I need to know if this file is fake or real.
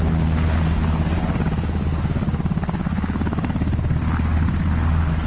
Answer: real